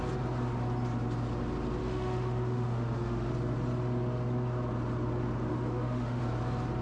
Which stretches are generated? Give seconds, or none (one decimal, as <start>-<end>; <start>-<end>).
1.8-3.3; 5.5-6.2